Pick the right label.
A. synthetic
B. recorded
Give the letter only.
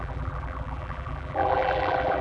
A